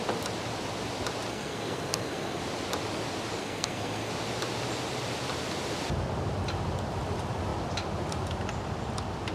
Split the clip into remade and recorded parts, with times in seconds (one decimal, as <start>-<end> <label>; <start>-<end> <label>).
0.0-1.3 recorded; 1.3-2.4 remade; 2.4-3.4 recorded; 3.4-4.1 remade; 4.1-9.3 recorded